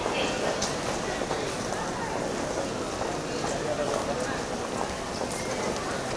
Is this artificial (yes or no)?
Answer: no